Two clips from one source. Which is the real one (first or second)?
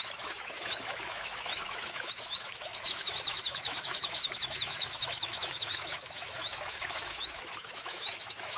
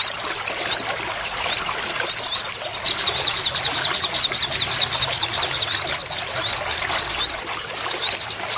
second